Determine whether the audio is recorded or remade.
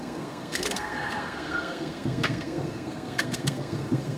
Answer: remade